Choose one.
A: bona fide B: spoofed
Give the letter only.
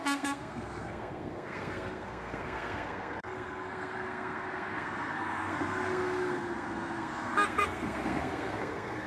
B